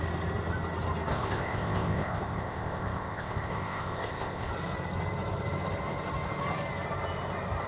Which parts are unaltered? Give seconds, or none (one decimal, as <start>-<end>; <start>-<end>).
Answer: 0.0-1.1; 4.5-7.7